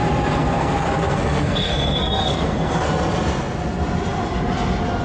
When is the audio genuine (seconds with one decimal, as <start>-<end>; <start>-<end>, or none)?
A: 0.0-0.4; 2.9-5.0